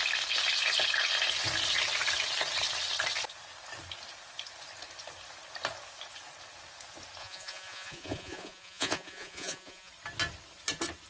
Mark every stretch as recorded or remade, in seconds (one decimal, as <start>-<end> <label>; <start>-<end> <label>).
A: 0.0-7.2 recorded; 7.2-9.9 remade; 9.9-11.1 recorded